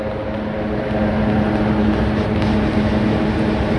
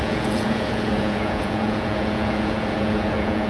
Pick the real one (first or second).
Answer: first